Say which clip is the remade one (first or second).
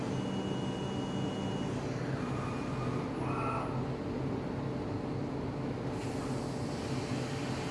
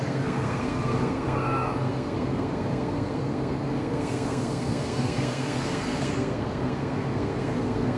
second